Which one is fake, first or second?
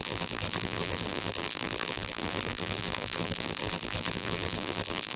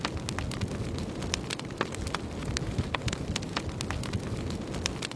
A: first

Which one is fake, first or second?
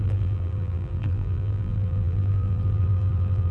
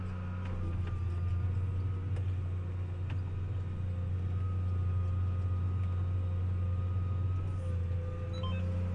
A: first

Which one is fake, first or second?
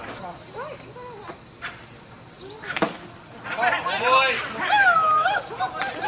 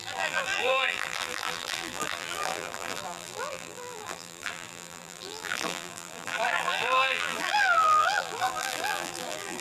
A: second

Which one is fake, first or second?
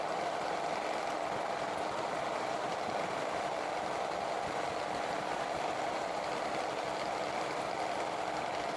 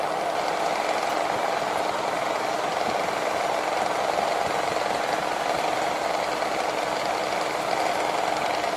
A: first